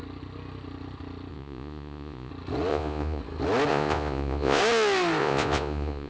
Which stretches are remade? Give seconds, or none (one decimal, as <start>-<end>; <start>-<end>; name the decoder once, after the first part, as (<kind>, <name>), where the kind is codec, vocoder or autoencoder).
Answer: 1.3-2.3 (vocoder, Vocos); 2.7-3.2; 3.7-4.6; 5.2-6.1